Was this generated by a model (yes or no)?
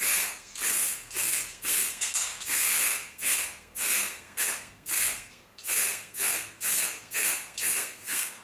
yes